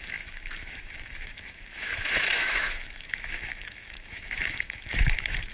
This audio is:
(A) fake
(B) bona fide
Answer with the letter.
A